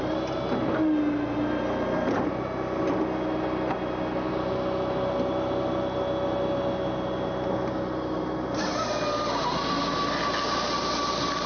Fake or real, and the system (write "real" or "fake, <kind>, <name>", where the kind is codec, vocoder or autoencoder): real